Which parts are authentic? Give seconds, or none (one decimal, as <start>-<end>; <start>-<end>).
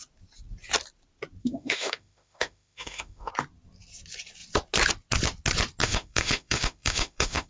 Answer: 0.0-1.4; 3.3-5.8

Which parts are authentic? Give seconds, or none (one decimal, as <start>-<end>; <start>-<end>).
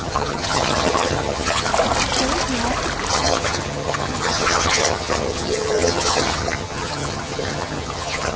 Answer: 1.7-3.1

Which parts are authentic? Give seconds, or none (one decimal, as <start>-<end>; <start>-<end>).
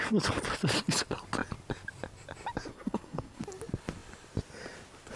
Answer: 0.0-2.7; 3.4-5.2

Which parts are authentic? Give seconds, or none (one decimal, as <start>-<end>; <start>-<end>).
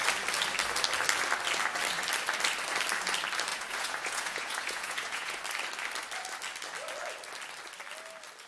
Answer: 0.0-3.5; 5.4-8.5